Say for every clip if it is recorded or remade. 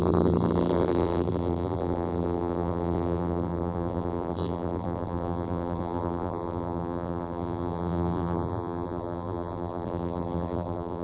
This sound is remade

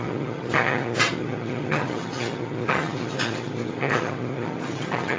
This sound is remade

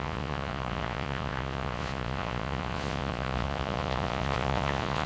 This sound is remade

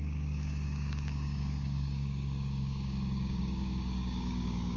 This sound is remade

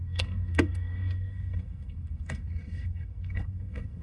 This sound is remade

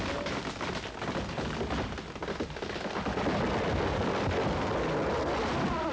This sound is recorded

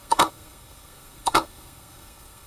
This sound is remade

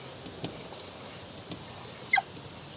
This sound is recorded